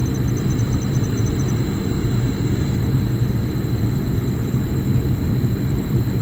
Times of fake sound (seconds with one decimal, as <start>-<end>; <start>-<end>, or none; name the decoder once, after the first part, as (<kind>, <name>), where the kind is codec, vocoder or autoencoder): 3.7-5.3 (vocoder, BigVGAN v2); 5.8-6.2